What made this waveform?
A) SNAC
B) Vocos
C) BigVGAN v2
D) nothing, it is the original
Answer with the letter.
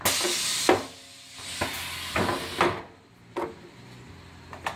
D